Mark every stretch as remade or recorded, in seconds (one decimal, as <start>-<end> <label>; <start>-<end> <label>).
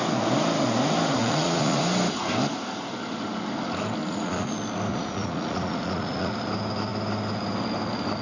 0.0-1.2 recorded; 1.2-1.8 remade; 1.8-4.0 recorded; 4.0-4.5 remade; 4.5-4.9 recorded; 4.9-6.3 remade; 6.3-8.2 recorded